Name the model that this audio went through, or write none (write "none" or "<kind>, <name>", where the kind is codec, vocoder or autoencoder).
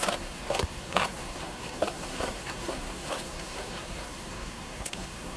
codec, SNAC